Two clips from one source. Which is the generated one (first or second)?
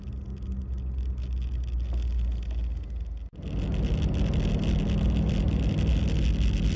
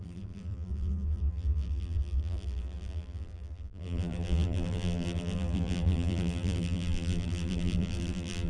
second